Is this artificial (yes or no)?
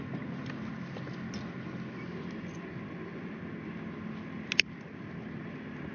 no